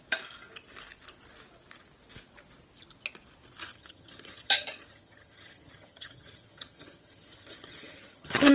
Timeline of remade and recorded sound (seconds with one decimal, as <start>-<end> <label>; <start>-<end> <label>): 0.0-3.6 recorded; 3.6-8.5 remade